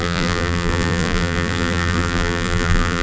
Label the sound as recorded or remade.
remade